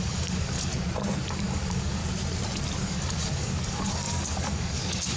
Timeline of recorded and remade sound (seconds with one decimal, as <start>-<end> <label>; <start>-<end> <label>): 0.0-0.7 remade; 0.7-1.3 recorded; 1.3-2.0 remade; 2.0-2.8 recorded; 2.8-5.2 remade